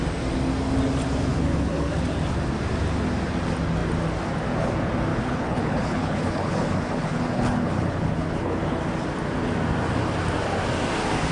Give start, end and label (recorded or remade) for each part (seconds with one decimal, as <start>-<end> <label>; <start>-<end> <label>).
0.0-1.3 recorded; 1.3-1.9 remade; 1.9-5.1 recorded; 5.1-8.8 remade; 8.8-11.3 recorded